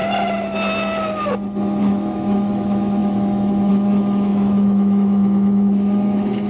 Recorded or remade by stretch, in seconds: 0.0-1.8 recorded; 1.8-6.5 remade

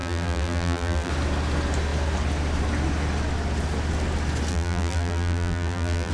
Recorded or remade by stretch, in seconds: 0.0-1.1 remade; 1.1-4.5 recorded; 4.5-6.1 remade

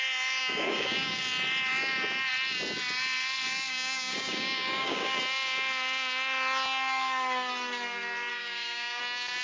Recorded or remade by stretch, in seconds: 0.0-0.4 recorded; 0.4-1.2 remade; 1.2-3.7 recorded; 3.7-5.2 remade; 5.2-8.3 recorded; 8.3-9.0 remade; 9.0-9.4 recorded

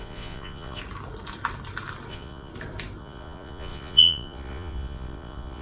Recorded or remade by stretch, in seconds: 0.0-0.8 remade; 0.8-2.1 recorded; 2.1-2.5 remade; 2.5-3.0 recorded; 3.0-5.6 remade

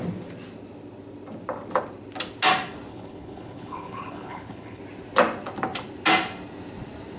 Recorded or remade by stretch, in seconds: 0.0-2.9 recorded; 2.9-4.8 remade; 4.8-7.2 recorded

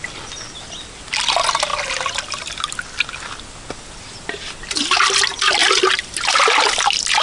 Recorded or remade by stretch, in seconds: 0.0-7.2 recorded